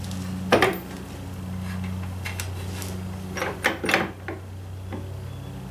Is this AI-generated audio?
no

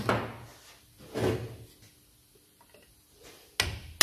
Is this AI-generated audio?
no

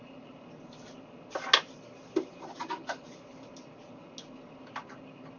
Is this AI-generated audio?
no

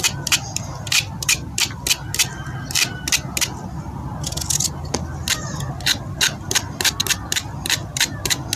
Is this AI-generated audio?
no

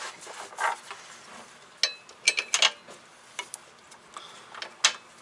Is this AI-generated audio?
no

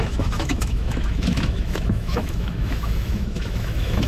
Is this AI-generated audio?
yes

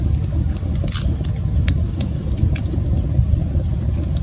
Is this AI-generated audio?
no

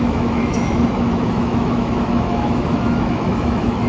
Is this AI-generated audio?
yes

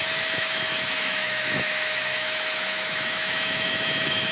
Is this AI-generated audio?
yes